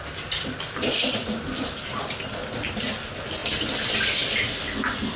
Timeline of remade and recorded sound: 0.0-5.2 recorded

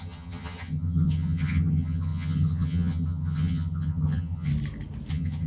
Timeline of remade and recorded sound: 0.0-4.5 remade; 4.5-5.1 recorded; 5.1-5.5 remade

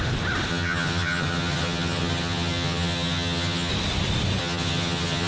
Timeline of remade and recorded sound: 0.0-0.5 recorded; 0.5-3.7 remade; 3.7-4.4 recorded; 4.4-5.3 remade

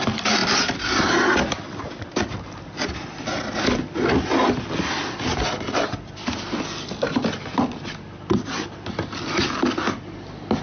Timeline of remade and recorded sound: 0.0-10.6 recorded

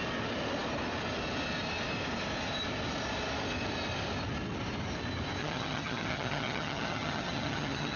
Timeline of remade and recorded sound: 0.0-5.4 recorded; 5.4-8.0 remade

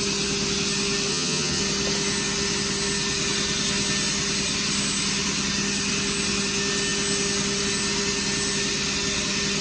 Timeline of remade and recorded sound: 0.0-1.1 recorded; 1.1-1.6 remade; 1.6-9.6 recorded

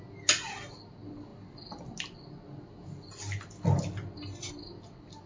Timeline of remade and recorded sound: 0.0-5.3 recorded